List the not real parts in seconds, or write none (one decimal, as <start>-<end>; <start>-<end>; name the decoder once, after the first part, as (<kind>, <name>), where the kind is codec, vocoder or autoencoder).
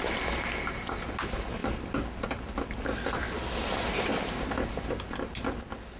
none